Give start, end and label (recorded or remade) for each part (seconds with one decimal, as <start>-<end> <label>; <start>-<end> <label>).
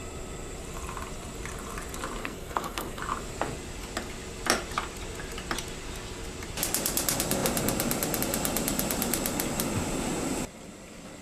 0.0-2.2 recorded; 2.2-3.0 remade; 3.0-11.2 recorded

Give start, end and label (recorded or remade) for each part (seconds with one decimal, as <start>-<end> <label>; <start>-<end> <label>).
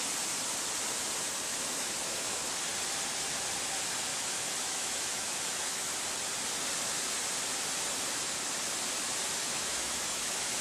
0.0-1.5 recorded; 1.5-2.4 remade; 2.4-4.1 recorded; 4.1-5.9 remade; 5.9-9.4 recorded; 9.4-10.6 remade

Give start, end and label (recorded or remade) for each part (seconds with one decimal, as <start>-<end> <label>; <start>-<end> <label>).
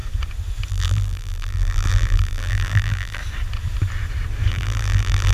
0.0-0.7 recorded; 0.7-3.2 remade; 3.2-4.5 recorded; 4.5-5.3 remade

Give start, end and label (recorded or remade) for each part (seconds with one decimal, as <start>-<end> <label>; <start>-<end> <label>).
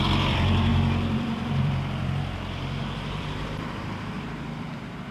0.0-5.1 remade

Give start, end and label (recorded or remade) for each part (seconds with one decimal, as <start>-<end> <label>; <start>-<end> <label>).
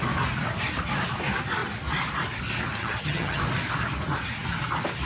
0.0-2.8 recorded; 2.8-3.4 remade; 3.4-5.1 recorded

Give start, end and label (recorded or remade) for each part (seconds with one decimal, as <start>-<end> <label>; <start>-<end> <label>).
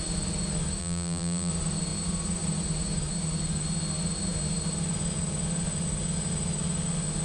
0.0-0.8 recorded; 0.8-1.5 remade; 1.5-7.2 recorded